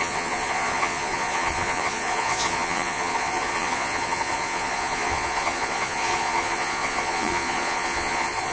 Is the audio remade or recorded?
remade